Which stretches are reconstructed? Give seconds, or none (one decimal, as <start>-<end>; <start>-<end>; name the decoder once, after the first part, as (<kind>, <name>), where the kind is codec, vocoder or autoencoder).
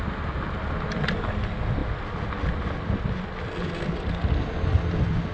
none